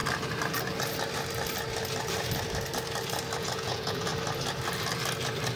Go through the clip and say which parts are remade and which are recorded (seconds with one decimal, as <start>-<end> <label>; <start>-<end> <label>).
0.0-3.4 recorded; 3.4-4.1 remade; 4.1-5.6 recorded